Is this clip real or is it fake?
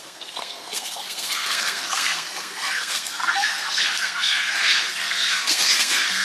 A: fake